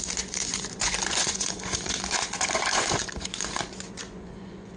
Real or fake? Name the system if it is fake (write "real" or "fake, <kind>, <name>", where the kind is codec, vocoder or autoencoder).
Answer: fake, vocoder, Vocos